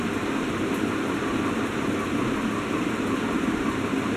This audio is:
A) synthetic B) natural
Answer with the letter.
B